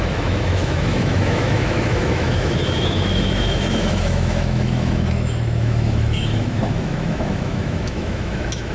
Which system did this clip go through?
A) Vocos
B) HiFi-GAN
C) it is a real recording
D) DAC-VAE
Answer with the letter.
D